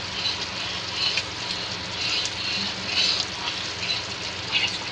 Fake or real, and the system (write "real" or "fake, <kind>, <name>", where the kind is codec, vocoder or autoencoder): real